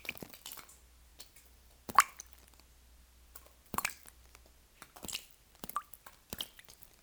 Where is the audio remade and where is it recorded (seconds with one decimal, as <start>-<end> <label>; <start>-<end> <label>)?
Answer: 0.0-7.0 recorded